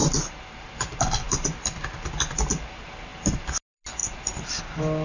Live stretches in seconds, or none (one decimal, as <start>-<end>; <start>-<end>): 0.0-5.0